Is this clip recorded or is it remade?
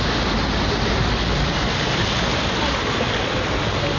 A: recorded